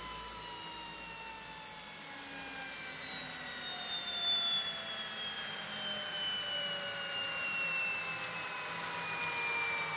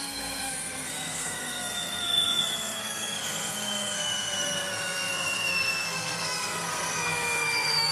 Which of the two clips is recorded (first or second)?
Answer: first